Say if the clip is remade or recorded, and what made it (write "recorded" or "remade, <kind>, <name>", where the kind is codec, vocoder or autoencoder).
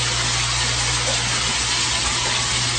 recorded